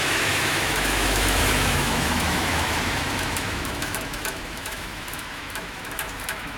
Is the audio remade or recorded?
remade